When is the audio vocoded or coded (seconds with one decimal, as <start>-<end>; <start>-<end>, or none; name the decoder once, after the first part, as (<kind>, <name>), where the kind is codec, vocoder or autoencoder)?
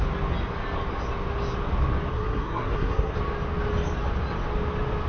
2.1-3.2 (codec, SNAC)